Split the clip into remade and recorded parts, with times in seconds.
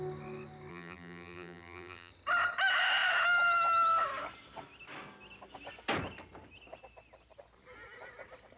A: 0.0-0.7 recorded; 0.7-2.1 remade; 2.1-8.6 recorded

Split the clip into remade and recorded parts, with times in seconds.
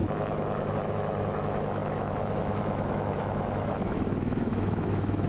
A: 0.0-5.3 remade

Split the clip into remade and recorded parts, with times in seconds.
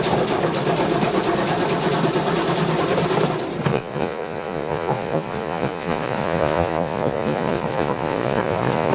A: 0.0-3.7 recorded; 3.7-8.9 remade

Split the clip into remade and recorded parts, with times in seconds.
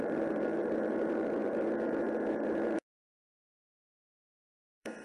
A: 0.0-5.0 remade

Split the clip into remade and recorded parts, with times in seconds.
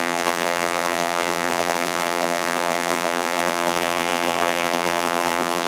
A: 0.0-5.7 remade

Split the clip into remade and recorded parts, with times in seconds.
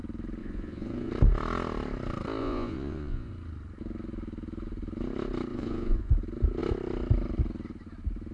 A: 0.0-0.4 recorded; 0.4-1.1 remade; 1.1-2.4 recorded; 2.4-3.3 remade; 3.3-5.5 recorded; 5.5-6.1 remade; 6.1-8.3 recorded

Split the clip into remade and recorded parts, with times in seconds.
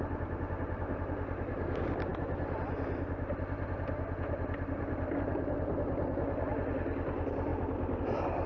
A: 0.0-8.5 recorded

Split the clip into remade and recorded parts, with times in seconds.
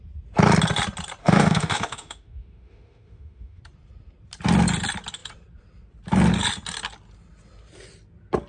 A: 0.0-1.2 recorded; 1.2-3.6 remade; 3.6-8.5 recorded